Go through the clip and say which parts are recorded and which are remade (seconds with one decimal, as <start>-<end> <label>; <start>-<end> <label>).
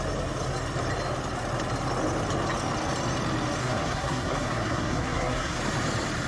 0.0-3.6 recorded; 3.6-5.6 remade; 5.6-6.3 recorded